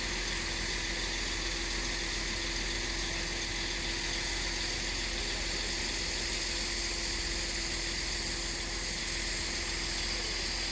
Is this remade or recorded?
recorded